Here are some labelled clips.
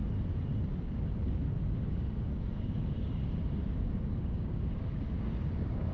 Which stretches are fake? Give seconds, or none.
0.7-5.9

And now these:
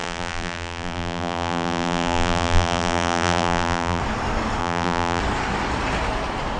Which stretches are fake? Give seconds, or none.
0.0-4.0; 4.6-5.2

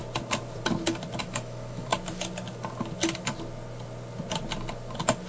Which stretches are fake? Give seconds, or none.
1.2-1.9

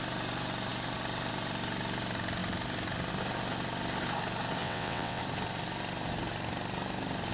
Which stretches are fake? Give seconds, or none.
4.6-5.2

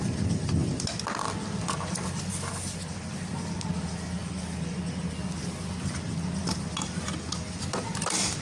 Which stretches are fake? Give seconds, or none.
none